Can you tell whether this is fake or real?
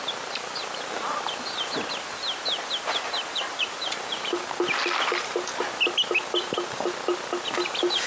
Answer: real